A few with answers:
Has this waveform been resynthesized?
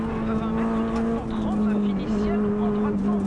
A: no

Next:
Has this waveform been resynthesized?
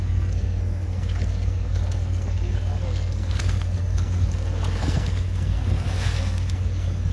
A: yes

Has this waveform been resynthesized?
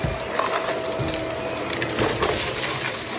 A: no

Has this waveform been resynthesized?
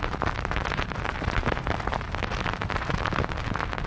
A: yes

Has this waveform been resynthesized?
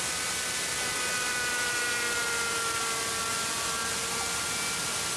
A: no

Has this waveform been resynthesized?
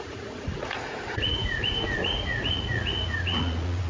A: yes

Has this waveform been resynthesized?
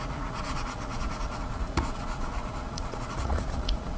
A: yes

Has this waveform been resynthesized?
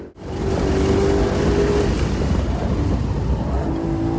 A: no